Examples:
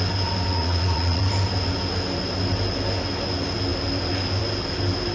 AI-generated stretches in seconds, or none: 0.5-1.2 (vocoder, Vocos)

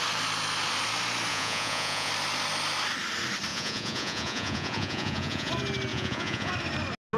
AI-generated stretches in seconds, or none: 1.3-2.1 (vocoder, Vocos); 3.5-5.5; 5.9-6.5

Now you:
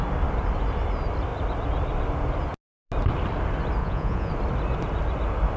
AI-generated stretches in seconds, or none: 3.8-4.3 (vocoder, Vocos)

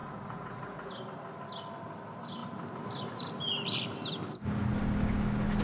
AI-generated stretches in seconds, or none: 0.0-0.9 (vocoder, Vocos)

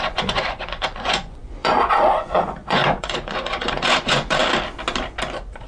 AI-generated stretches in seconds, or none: 0.0-4.4 (vocoder, Vocos)

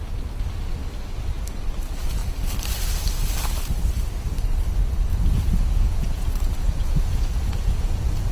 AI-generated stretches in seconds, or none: 5.1-8.3 (vocoder, Vocos)

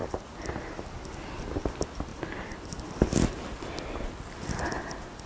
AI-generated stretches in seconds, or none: none